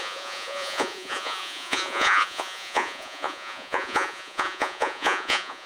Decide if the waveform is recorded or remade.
remade